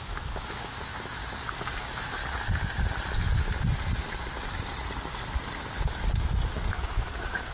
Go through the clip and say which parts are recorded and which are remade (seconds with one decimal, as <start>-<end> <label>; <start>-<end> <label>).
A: 0.0-1.2 remade; 1.2-1.8 recorded; 1.8-2.2 remade; 2.2-6.7 recorded; 6.7-7.5 remade